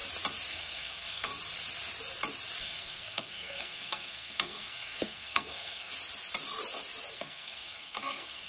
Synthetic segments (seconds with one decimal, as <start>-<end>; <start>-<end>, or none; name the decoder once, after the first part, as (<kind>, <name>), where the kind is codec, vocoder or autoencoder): 0.5-1.3 (codec, SNAC); 2.6-5.9; 7.1-8.5